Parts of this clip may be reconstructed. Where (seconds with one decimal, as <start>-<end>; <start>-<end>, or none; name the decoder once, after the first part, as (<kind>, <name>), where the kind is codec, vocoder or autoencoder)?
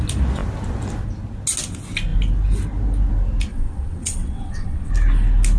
3.5-4.9 (vocoder, WaveNeXt)